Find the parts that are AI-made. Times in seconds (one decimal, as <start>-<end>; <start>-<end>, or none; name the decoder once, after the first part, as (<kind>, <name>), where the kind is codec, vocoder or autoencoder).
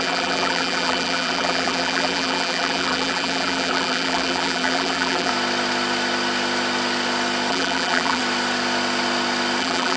0.0-5.3 (vocoder, BigVGAN v2); 7.5-8.2; 9.6-10.0